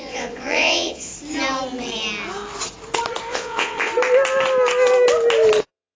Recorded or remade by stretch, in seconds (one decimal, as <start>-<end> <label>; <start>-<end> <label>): 0.0-1.1 remade; 1.1-3.3 recorded; 3.3-3.9 remade; 3.9-5.6 recorded; 5.6-6.0 remade